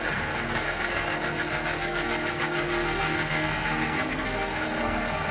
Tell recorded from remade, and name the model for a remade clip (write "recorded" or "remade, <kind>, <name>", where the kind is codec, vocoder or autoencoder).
remade, codec, SNAC